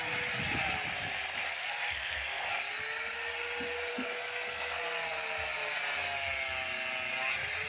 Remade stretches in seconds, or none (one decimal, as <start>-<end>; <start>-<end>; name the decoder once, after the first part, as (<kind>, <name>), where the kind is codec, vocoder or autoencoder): 1.5-2.5 (codec, SNAC); 3.9-4.8

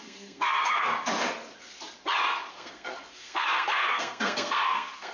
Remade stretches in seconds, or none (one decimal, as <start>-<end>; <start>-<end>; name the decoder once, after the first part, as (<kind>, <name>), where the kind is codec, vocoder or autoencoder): 0.0-0.9 (codec, SNAC); 2.5-5.1

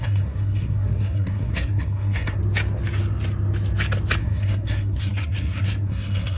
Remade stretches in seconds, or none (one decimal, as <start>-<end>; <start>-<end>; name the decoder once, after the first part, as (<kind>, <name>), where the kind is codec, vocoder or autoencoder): 0.0-2.4 (codec, SNAC); 4.2-6.4

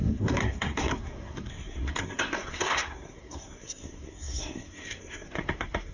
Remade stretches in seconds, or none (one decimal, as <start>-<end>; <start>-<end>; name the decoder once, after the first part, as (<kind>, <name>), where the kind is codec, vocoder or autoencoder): 0.0-5.9 (codec, SNAC)

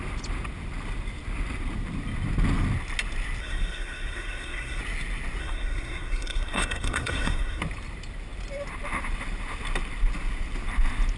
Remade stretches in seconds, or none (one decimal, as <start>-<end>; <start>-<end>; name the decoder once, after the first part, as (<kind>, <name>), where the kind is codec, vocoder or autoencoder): 3.4-4.8 (codec, SNAC); 5.4-7.6